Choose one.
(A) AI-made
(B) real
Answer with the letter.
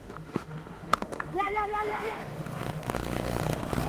A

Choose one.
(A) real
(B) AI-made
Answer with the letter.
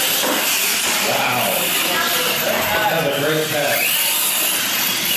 A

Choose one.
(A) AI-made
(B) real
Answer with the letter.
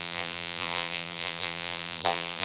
A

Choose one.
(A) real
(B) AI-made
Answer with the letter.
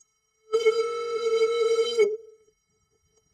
B